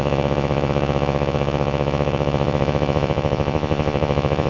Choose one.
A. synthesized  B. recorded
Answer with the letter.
A